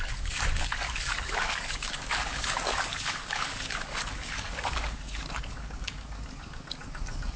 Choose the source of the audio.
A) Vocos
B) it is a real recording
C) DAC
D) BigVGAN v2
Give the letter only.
C